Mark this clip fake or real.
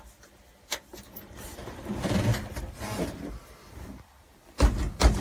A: real